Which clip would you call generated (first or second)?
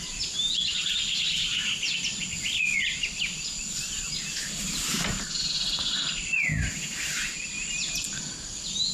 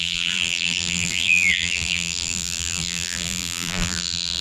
second